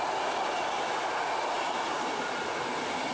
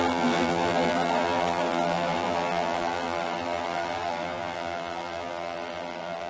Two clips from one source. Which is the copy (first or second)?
second